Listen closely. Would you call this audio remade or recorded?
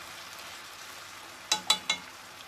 recorded